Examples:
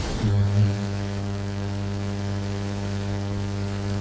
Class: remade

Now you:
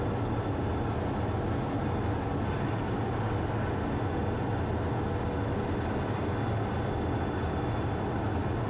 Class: recorded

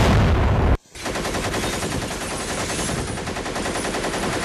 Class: recorded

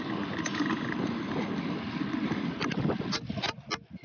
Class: recorded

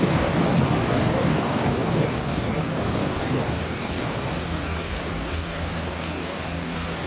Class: remade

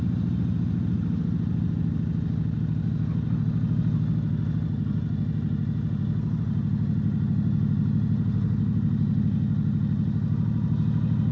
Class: recorded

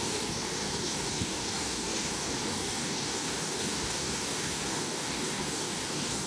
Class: remade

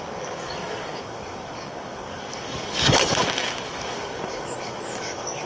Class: remade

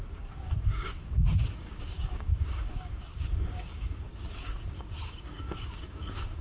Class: remade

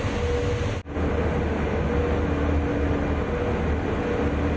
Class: recorded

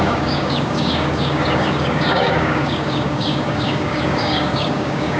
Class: remade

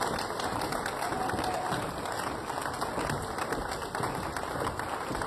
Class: recorded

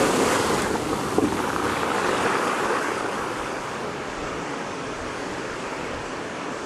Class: remade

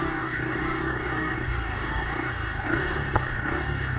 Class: remade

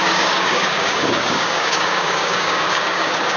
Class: remade